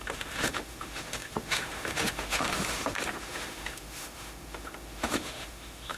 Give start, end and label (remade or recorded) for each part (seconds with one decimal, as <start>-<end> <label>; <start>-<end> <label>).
0.0-6.0 remade